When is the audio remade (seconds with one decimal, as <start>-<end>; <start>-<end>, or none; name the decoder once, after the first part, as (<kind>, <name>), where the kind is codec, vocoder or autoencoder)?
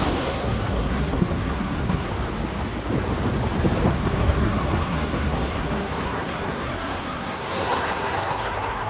0.0-2.1 (codec, SNAC); 3.9-8.9